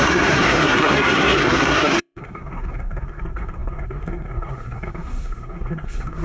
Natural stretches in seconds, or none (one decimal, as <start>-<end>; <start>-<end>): none